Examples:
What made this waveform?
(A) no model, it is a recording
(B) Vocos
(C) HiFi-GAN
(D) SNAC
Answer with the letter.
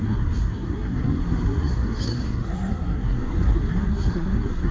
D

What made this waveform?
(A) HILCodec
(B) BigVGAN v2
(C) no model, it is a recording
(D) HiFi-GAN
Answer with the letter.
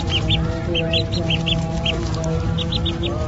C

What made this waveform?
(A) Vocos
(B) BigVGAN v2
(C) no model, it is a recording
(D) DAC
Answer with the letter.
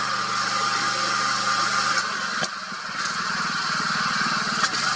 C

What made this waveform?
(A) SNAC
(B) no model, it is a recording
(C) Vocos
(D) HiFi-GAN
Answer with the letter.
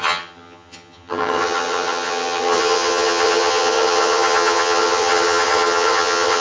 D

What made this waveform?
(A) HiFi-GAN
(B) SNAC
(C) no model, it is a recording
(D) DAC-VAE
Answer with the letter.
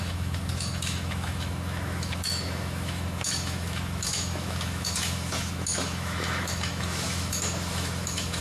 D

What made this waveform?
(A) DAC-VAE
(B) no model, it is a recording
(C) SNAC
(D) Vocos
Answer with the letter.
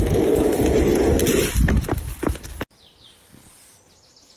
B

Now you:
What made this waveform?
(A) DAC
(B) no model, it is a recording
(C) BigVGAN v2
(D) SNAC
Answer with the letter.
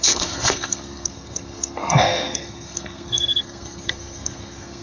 D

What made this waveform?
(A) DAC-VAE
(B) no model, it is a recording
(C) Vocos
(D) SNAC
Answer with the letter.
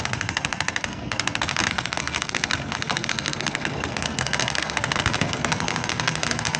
D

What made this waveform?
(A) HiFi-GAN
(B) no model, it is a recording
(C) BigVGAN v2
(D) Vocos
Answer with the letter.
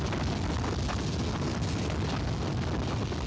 B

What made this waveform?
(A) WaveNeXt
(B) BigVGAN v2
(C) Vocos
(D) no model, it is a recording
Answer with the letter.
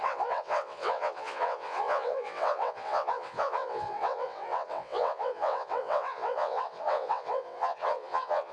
A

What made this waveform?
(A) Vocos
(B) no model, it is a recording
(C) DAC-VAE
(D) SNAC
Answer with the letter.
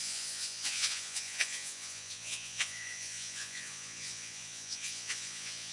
A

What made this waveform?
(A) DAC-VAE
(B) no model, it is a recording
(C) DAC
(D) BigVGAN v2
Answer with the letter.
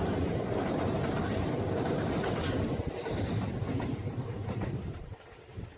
D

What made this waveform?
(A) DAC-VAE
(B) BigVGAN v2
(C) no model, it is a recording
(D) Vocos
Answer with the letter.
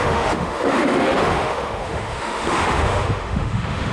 A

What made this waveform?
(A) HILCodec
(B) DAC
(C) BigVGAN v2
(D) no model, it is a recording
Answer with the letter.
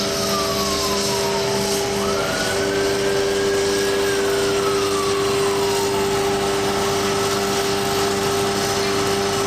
D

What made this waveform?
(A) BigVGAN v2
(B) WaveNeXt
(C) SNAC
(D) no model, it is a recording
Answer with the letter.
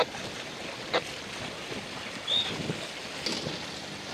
D